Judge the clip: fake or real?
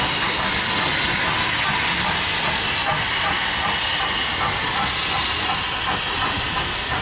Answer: real